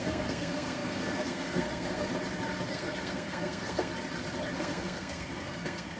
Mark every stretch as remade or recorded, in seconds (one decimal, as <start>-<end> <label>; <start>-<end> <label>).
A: 0.0-2.1 remade; 2.1-2.7 recorded; 2.7-3.9 remade; 3.9-4.6 recorded; 4.6-6.0 remade